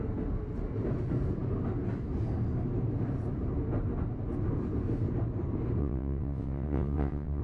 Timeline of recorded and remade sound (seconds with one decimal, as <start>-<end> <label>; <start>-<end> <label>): 0.0-5.8 recorded; 5.8-7.4 remade